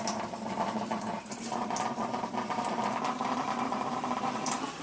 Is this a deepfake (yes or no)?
yes